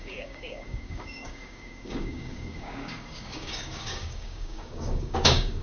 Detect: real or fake fake